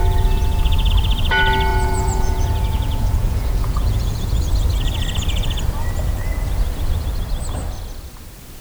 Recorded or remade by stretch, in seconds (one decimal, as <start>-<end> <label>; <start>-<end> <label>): 0.0-0.9 remade; 0.9-1.7 recorded; 1.7-4.4 remade; 4.4-8.6 recorded